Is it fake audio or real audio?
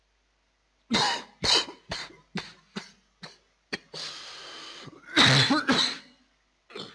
real